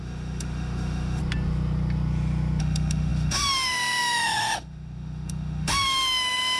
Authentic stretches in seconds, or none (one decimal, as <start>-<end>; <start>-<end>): 1.2-2.6